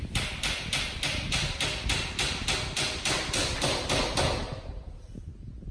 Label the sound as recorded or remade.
recorded